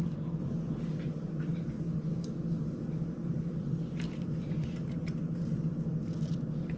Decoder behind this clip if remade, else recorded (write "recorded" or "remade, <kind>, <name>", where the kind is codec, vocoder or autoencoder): recorded